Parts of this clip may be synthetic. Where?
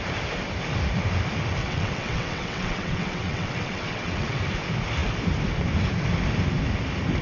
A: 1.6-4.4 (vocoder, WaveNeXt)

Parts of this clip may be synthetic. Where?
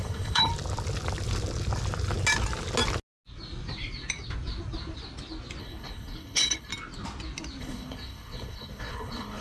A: 0.0-0.5 (codec, HILCodec); 5.6-6.7; 7.6-9.4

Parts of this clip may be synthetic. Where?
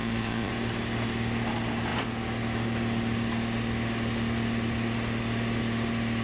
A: 0.0-0.5 (vocoder, Vocos)